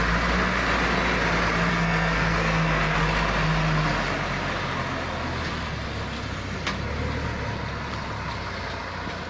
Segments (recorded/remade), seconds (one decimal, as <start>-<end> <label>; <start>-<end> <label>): 0.0-1.7 recorded; 1.7-3.0 remade; 3.0-9.3 recorded

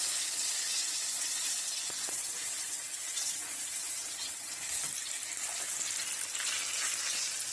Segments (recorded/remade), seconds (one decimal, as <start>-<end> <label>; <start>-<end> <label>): 0.0-4.5 remade; 4.5-7.5 recorded